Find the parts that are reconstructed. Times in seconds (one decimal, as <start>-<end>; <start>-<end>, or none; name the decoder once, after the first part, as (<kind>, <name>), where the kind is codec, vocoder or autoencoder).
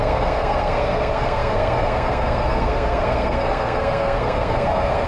0.0-5.1 (codec, SNAC)